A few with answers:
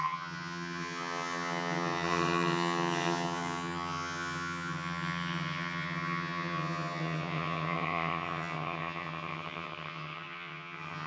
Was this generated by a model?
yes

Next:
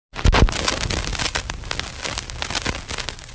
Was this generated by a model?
no